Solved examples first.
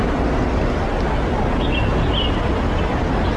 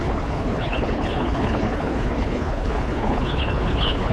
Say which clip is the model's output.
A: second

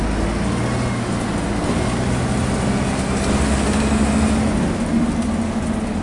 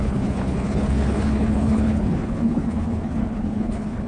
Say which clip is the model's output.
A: second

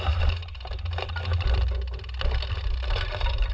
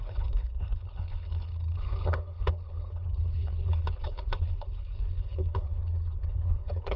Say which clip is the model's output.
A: second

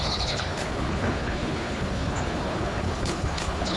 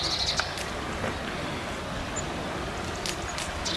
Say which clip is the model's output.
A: first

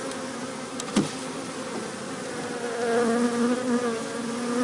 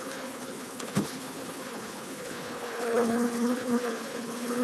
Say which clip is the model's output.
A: second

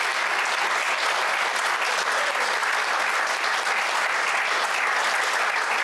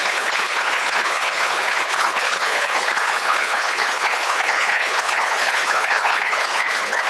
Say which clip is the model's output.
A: second